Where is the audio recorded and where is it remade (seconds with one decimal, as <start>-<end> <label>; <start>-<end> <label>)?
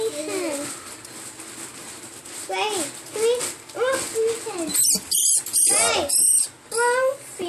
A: 0.0-7.5 recorded